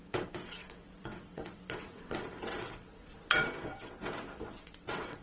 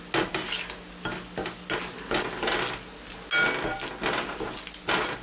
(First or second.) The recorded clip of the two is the second